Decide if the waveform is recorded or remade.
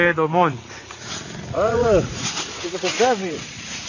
remade